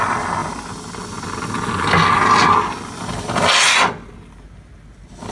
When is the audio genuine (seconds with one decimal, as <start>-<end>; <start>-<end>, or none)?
0.0-5.3